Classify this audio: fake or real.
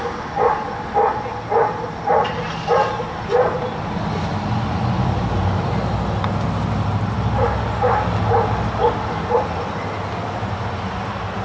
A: real